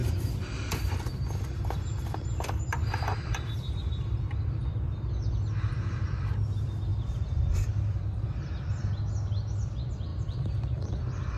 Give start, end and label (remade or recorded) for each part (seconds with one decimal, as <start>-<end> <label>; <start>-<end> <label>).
0.0-5.0 remade; 5.0-6.9 recorded; 6.9-8.9 remade; 8.9-10.1 recorded; 10.1-11.4 remade